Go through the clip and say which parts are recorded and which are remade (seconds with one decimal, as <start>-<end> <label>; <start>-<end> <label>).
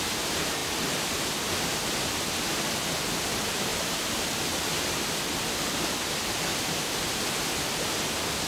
0.0-3.7 recorded; 3.7-4.3 remade; 4.3-6.5 recorded; 6.5-7.0 remade; 7.0-8.5 recorded